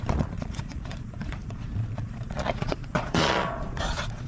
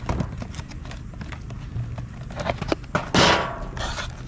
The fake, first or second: first